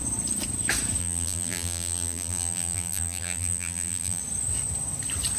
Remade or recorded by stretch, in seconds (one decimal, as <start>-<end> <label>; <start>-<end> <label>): 0.0-1.0 recorded; 1.0-4.2 remade; 4.2-5.4 recorded